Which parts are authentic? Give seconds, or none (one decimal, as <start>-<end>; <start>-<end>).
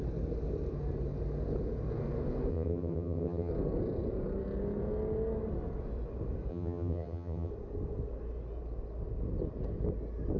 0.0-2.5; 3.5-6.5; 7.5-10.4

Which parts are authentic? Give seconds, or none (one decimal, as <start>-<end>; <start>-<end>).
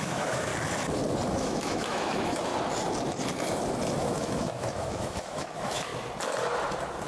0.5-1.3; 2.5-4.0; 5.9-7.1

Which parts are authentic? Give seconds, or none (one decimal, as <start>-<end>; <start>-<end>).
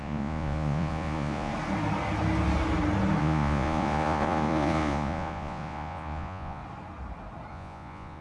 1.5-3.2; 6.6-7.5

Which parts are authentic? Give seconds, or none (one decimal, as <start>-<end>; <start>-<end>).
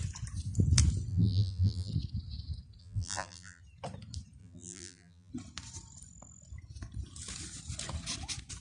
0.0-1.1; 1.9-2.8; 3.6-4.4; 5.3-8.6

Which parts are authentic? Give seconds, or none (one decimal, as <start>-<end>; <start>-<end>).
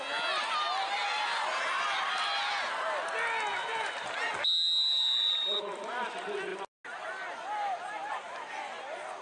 0.0-3.5; 4.3-9.2